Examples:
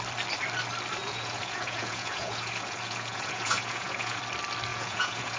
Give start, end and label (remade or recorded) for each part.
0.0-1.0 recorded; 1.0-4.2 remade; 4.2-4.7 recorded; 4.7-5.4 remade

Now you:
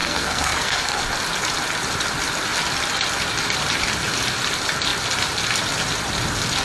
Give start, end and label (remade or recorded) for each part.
0.0-1.0 remade; 1.0-6.6 recorded

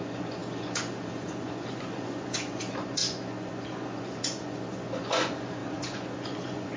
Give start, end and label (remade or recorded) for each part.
0.0-6.8 remade

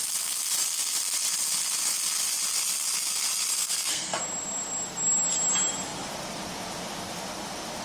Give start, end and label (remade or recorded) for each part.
0.0-3.5 recorded; 3.5-4.2 remade; 4.2-7.8 recorded

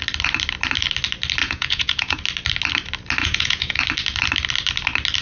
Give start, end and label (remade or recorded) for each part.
0.0-1.4 recorded; 1.4-2.2 remade; 2.2-3.2 recorded; 3.2-3.8 remade; 3.8-5.2 recorded

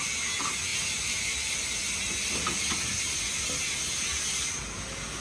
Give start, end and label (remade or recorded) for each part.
0.0-5.2 recorded